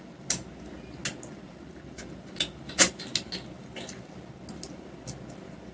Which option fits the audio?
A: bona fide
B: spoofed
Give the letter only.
A